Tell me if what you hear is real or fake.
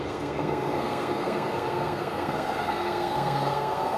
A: fake